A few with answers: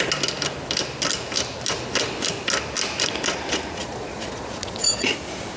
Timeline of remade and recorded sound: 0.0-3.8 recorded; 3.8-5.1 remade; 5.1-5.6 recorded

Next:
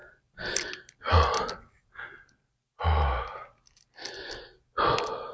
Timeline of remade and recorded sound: 0.0-5.3 recorded